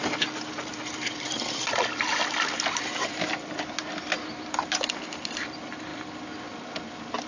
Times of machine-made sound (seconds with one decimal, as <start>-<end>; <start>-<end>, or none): none